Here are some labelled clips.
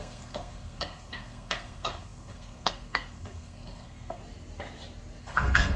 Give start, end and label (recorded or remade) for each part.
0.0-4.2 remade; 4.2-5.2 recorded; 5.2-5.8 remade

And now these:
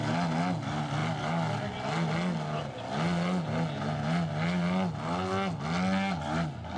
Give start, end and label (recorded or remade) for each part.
0.0-6.8 recorded